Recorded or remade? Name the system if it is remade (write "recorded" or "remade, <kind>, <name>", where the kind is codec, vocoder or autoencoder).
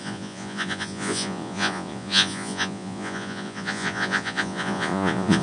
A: remade, vocoder, Vocos